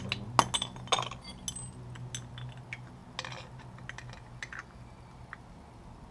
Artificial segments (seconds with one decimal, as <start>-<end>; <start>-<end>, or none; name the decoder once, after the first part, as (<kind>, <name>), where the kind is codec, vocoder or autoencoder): none